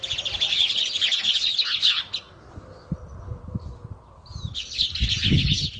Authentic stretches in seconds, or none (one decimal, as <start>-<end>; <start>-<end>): 0.0-0.5; 2.0-4.5